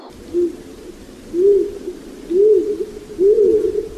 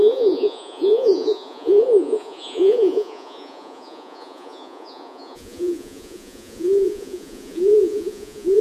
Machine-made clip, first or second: second